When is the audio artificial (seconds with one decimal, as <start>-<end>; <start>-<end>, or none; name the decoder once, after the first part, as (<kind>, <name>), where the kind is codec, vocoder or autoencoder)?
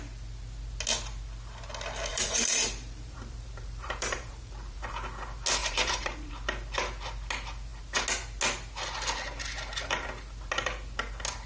2.1-4.9 (vocoder, BigVGAN v2); 5.6-6.3